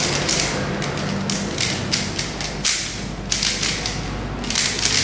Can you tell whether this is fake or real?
real